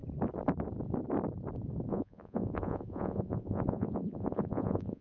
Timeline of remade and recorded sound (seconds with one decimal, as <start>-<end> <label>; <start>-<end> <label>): 0.0-1.9 recorded; 1.9-5.0 remade